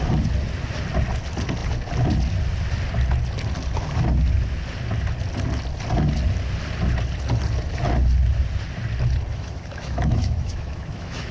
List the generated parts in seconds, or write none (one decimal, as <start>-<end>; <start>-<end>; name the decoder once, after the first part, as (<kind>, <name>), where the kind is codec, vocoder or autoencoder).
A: 9.3-11.3 (autoencoder, DAC-VAE)